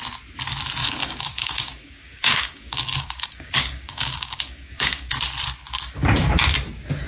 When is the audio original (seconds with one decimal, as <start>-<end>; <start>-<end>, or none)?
0.0-0.8; 5.1-7.1